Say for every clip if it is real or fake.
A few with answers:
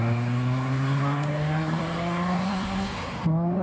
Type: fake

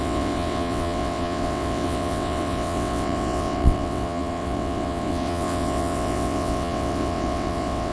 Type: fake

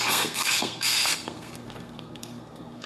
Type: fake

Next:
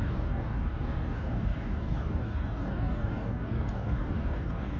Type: fake